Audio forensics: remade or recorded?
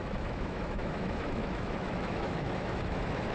remade